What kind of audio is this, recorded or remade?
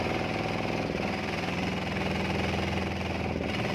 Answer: recorded